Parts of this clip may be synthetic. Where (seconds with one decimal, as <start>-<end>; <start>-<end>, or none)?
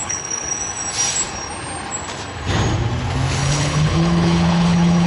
0.0-0.5; 3.4-5.1